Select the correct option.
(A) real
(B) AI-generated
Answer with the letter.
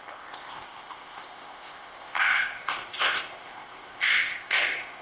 B